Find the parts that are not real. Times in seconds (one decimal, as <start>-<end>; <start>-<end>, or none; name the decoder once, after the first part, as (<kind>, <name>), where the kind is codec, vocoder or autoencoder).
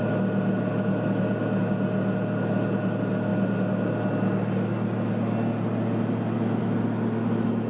none